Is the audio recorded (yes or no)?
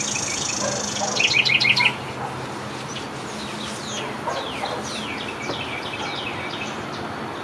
yes